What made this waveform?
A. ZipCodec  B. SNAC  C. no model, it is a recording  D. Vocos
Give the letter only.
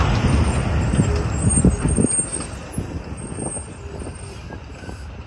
C